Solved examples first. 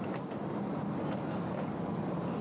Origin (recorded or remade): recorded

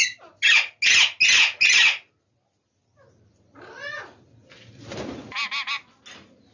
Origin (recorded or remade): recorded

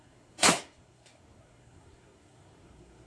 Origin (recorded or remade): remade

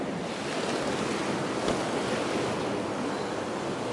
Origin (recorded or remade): recorded